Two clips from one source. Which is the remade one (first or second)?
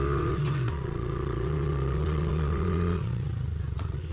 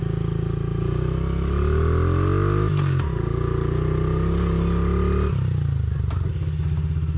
first